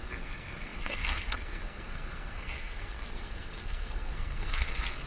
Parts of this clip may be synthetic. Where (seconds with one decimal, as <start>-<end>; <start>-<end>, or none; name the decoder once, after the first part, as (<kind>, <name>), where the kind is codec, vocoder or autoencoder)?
0.0-5.1 (codec, SNAC)